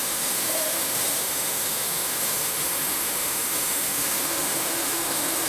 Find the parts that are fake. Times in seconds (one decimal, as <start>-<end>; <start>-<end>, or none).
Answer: 0.0-5.5